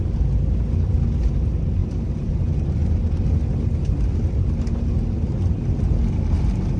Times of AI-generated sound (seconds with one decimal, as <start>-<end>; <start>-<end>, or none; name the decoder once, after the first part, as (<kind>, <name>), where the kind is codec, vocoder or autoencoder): 1.8-2.4 (vocoder, BigVGAN v2)